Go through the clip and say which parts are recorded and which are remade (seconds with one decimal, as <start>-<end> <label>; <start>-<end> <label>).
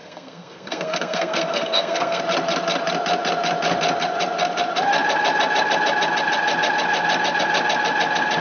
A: 0.0-2.2 remade; 2.2-8.4 recorded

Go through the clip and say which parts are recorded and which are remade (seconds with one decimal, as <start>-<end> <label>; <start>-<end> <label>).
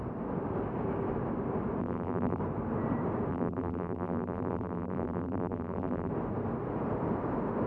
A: 0.0-1.8 recorded; 1.8-2.4 remade; 2.4-3.3 recorded; 3.3-6.1 remade; 6.1-7.7 recorded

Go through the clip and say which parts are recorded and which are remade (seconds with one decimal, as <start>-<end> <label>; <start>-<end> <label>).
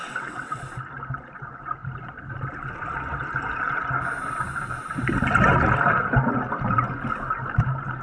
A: 0.0-0.6 remade; 0.6-8.0 recorded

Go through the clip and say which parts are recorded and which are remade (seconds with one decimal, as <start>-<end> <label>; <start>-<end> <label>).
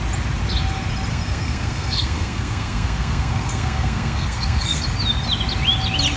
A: 0.0-1.1 recorded; 1.1-4.8 remade; 4.8-6.2 recorded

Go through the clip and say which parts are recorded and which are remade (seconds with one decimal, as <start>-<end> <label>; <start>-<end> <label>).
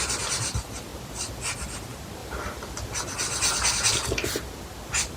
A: 0.0-2.2 recorded; 2.2-3.0 remade; 3.0-5.2 recorded